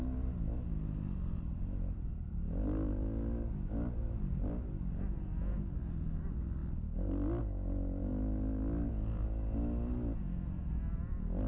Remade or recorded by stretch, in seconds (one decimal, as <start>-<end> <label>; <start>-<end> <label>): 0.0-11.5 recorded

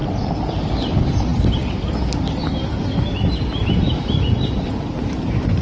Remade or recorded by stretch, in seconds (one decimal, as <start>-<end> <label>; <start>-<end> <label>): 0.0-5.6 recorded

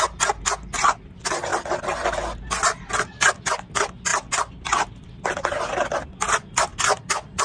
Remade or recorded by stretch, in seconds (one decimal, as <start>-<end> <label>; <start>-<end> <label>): 0.0-7.4 recorded